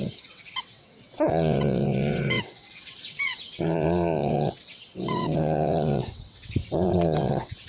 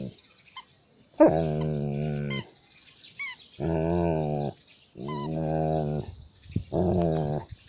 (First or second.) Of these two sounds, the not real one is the first